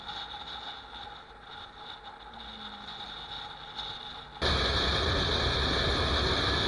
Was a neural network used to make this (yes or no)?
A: no